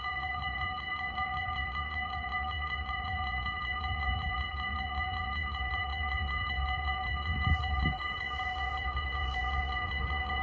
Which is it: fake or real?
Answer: fake